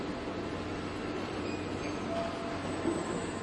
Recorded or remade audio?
recorded